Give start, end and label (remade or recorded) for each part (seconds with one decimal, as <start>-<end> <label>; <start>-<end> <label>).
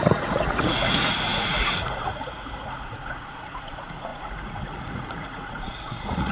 0.0-6.3 remade